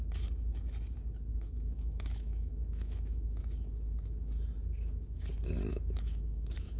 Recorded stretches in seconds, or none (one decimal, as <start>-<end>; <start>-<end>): 0.0-1.3; 3.4-5.7

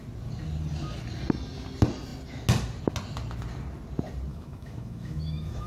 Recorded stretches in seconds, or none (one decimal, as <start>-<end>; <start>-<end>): 0.0-4.3

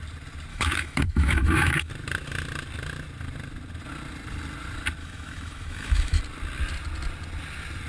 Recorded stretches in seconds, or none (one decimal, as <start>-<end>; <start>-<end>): 0.0-0.5; 1.9-5.0; 6.2-7.9

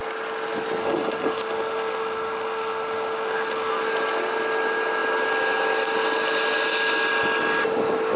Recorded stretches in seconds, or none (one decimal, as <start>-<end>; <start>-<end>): 0.0-0.8; 3.7-8.2